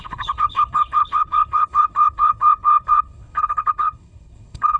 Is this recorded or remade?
remade